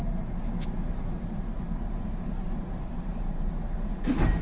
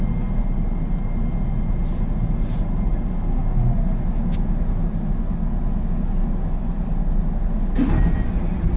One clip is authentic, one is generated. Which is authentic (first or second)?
second